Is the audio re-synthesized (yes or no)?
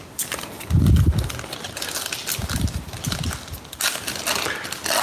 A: no